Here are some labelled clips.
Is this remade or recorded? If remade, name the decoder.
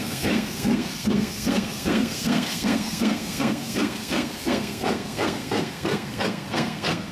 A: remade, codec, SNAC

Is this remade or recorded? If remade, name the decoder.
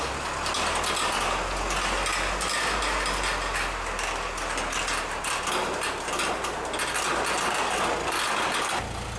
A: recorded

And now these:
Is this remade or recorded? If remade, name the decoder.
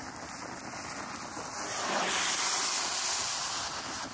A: recorded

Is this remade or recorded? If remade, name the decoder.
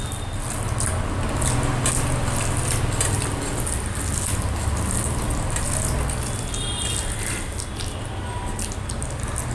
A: recorded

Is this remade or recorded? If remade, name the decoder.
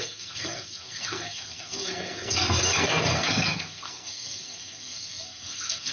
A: remade, codec, SNAC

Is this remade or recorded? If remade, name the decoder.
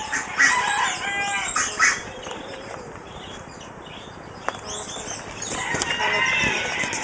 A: recorded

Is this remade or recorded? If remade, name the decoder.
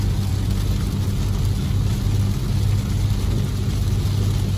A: recorded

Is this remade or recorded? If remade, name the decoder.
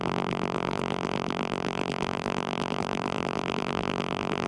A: remade, vocoder, BigVGAN v2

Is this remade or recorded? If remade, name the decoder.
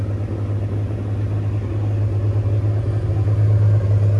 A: recorded